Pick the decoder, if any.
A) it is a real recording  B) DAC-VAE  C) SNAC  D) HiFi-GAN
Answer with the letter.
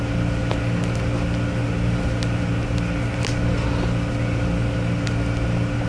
A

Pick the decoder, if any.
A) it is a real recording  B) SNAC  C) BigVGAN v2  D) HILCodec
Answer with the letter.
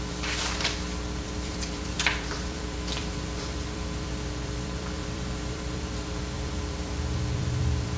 C